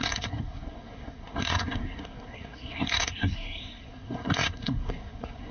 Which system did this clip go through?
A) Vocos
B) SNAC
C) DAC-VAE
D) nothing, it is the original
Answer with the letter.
B